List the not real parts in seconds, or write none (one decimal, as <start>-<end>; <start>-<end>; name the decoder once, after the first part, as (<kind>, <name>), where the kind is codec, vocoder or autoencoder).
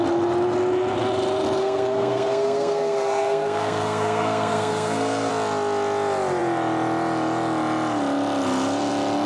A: 1.6-5.3 (codec, SNAC)